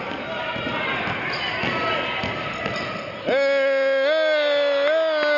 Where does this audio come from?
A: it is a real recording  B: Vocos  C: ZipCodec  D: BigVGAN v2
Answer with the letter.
A